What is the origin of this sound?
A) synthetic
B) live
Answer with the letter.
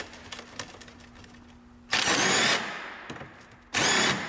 B